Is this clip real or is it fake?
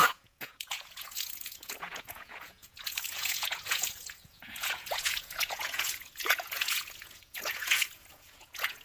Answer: fake